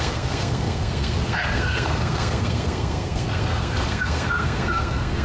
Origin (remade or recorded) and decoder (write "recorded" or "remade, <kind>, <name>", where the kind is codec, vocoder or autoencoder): remade, codec, SNAC